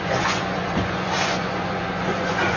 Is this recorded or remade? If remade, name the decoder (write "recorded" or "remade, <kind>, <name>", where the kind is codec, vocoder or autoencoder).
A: remade, vocoder, Vocos